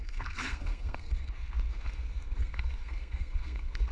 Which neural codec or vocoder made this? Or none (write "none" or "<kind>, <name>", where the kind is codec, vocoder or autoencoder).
codec, SNAC